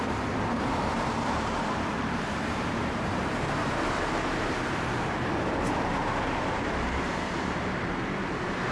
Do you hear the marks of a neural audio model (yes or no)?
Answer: yes